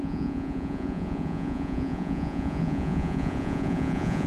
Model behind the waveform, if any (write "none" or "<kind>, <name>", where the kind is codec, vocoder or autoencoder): vocoder, Vocos